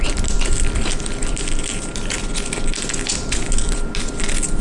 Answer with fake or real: real